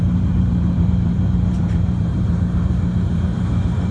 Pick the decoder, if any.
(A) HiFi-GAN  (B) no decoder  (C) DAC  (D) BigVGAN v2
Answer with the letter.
D